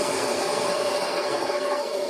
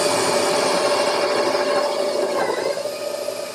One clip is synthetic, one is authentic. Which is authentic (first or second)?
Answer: second